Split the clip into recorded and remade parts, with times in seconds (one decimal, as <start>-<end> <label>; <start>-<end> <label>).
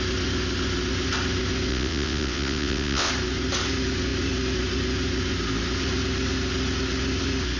0.0-1.7 recorded; 1.7-3.1 remade; 3.1-7.6 recorded